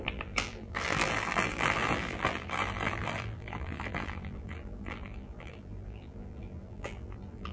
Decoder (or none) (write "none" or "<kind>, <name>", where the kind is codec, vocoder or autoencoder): vocoder, BigVGAN v2